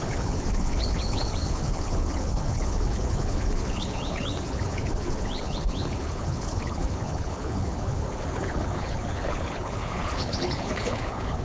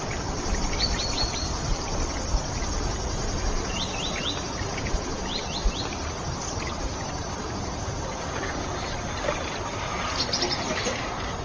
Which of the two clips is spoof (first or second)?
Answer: first